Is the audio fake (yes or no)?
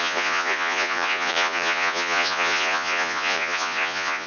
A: yes